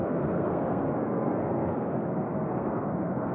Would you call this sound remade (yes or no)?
yes